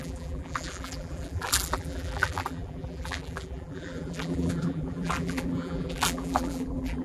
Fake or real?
fake